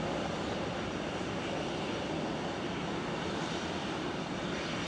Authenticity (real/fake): real